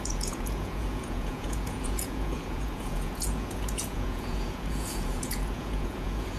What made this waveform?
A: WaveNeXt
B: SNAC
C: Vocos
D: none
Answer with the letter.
C